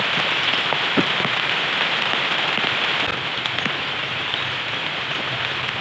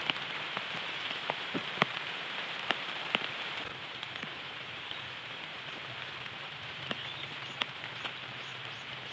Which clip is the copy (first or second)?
second